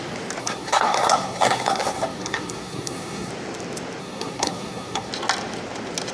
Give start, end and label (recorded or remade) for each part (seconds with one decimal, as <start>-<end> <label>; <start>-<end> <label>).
0.0-0.4 recorded; 0.4-3.3 remade; 3.3-4.0 recorded; 4.0-5.1 remade; 5.1-6.1 recorded